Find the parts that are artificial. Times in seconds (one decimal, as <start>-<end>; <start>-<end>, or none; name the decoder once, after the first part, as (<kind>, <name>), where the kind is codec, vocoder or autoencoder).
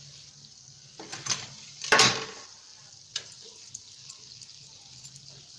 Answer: none